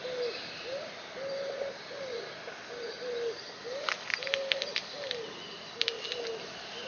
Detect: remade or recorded recorded